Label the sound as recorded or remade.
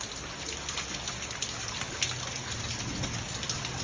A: recorded